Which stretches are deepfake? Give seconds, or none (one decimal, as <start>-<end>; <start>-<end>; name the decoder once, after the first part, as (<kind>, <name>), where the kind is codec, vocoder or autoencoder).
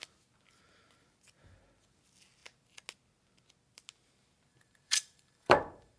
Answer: 4.5-6.0 (vocoder, BigVGAN v2)